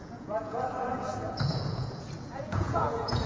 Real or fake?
fake